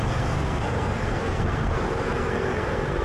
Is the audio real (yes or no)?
no